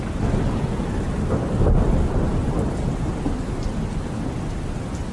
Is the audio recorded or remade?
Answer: recorded